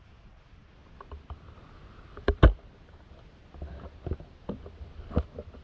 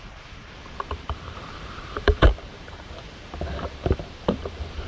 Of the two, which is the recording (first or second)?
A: first